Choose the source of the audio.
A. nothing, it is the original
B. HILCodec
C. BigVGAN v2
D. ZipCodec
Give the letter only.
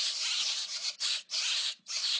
A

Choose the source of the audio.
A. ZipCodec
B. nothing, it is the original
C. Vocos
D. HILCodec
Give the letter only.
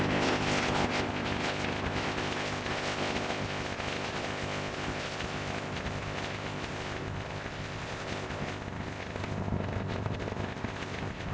A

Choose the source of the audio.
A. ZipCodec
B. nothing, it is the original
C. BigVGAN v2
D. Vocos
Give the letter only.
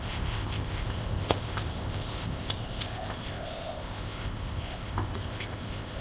A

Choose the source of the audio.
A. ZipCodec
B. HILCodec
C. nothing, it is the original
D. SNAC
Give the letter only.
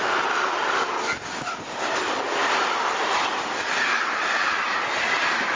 C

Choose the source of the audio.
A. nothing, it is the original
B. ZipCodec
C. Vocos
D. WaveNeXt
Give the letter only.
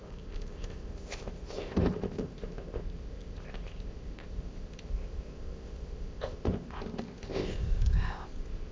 B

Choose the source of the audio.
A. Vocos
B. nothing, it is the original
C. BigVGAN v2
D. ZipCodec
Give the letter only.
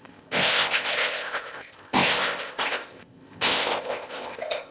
D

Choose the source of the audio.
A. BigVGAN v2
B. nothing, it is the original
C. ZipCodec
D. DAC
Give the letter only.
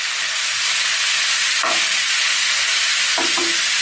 B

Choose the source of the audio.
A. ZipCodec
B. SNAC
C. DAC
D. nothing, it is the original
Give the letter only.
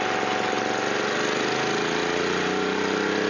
D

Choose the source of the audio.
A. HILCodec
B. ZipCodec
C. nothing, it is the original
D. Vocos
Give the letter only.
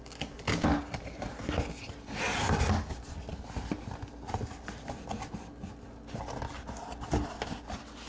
C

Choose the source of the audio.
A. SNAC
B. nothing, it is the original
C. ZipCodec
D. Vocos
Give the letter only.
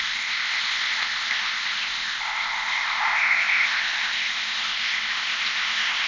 C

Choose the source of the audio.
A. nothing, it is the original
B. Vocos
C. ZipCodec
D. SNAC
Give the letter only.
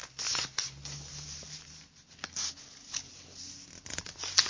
A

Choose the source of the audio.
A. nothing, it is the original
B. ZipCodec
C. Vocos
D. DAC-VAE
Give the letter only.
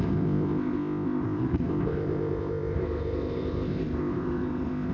B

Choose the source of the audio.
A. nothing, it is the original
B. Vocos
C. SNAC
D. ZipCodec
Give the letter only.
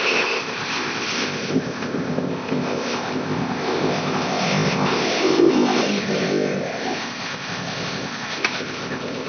D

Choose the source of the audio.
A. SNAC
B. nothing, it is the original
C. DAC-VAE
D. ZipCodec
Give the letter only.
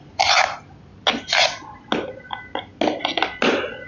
B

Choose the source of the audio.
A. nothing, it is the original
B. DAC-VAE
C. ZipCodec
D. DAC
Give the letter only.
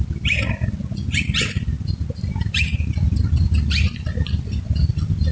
A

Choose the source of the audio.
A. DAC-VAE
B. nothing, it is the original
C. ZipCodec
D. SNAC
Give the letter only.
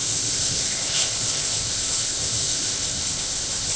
C